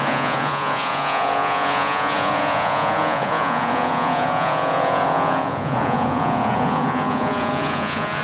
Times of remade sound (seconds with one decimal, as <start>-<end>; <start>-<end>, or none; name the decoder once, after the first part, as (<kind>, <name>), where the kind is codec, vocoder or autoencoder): 0.0-8.2 (vocoder, Vocos)